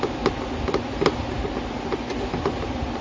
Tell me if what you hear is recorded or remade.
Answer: recorded